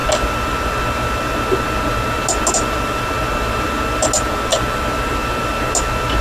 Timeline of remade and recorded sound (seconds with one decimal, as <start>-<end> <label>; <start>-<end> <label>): 0.0-6.2 recorded